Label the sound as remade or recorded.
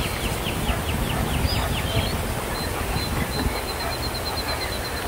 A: recorded